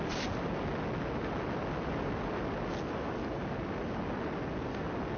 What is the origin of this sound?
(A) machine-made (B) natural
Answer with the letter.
B